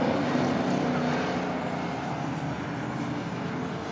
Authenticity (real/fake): real